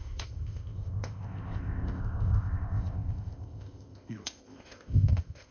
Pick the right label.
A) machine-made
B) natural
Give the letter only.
A